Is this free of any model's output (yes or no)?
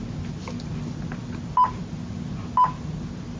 yes